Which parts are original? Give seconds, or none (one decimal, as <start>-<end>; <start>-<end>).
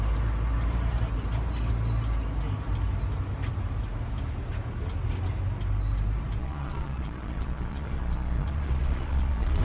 0.0-6.4